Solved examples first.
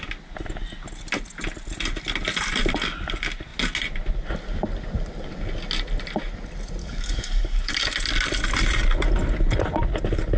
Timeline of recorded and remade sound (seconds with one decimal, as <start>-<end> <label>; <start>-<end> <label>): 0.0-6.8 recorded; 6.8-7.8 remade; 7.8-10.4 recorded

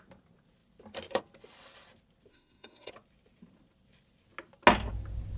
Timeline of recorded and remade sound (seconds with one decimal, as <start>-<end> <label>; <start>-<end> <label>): 0.0-2.3 recorded; 2.3-2.9 remade; 2.9-5.4 recorded

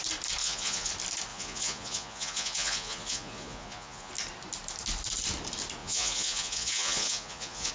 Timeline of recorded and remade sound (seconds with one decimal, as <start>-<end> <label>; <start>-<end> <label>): 0.0-0.4 recorded; 0.4-0.9 remade; 0.9-1.3 recorded; 1.3-4.1 remade; 4.1-5.8 recorded; 5.8-7.7 remade

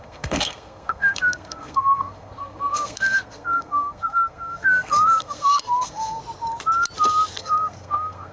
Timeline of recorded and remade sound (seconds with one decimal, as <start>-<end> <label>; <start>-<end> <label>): 0.0-6.2 remade; 6.2-7.4 recorded; 7.4-8.3 remade

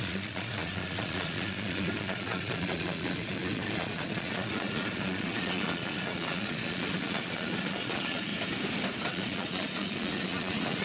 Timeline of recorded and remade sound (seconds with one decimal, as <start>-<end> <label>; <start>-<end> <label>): 0.0-8.3 remade; 8.3-9.1 recorded; 9.1-10.8 remade

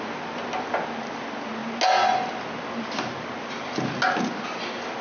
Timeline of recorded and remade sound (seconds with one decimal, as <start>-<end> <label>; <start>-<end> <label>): 0.0-5.0 recorded